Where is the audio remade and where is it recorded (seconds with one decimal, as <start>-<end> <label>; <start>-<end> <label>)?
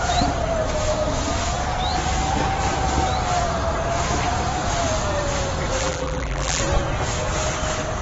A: 0.0-5.8 recorded; 5.8-6.6 remade; 6.6-8.0 recorded